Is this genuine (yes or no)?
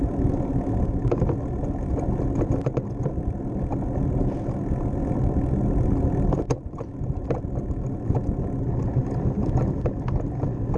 yes